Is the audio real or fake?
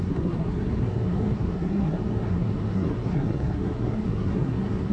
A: fake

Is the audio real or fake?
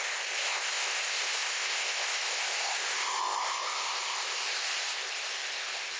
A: fake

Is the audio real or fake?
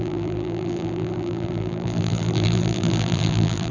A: fake